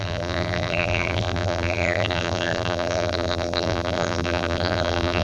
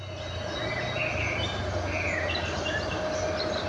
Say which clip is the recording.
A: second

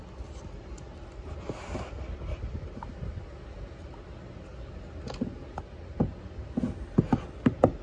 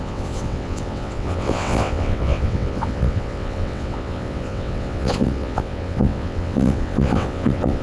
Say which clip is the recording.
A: first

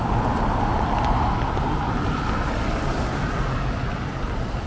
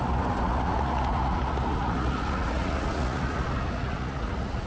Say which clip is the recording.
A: first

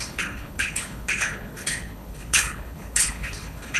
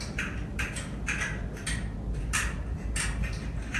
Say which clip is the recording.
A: second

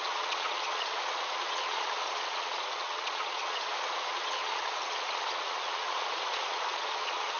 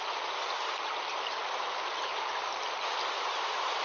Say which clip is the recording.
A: second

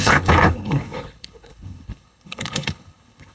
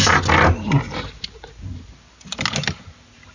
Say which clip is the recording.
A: second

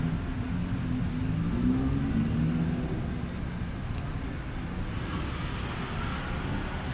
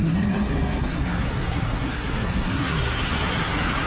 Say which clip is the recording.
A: first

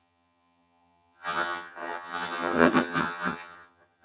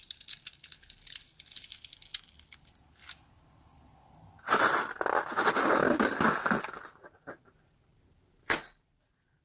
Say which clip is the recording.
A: second